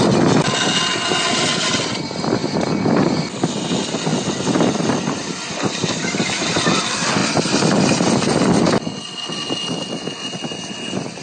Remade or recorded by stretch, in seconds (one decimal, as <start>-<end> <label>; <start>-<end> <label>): 0.0-2.4 recorded; 2.4-3.3 remade; 3.3-11.2 recorded

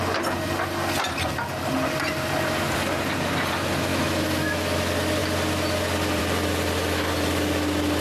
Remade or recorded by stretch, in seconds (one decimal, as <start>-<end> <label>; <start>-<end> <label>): 0.0-3.9 recorded; 3.9-4.8 remade; 4.8-8.0 recorded

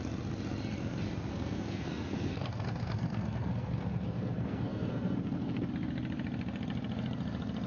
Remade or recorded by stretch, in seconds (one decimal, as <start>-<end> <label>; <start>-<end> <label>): 0.0-1.3 recorded; 1.3-5.7 remade; 5.7-7.7 recorded

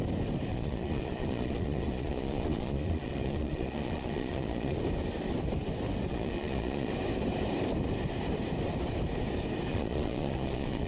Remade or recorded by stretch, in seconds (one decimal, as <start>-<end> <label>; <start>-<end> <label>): 0.0-0.5 recorded; 0.5-4.8 remade; 4.8-6.1 recorded; 6.1-6.9 remade; 6.9-9.7 recorded; 9.7-10.9 remade